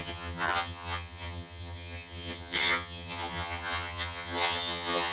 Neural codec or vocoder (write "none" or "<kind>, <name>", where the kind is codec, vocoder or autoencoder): vocoder, HiFi-GAN